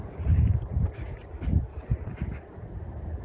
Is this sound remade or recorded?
remade